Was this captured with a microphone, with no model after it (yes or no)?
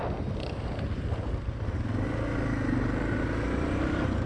yes